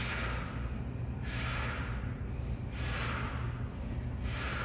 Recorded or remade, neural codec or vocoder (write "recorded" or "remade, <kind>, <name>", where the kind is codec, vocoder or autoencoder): recorded